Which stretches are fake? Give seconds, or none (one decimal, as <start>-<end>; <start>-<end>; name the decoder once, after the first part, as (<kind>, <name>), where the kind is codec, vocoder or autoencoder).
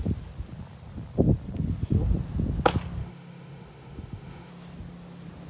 3.0-4.5 (autoencoder, DAC-VAE)